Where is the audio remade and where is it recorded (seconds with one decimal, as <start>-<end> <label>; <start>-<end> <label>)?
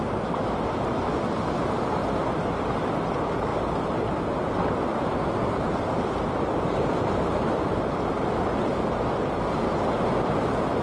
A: 0.0-2.0 remade; 2.0-3.1 recorded; 3.1-3.5 remade; 3.5-4.4 recorded; 4.4-8.7 remade; 8.7-9.6 recorded; 9.6-10.8 remade